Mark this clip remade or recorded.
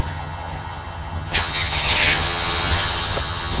remade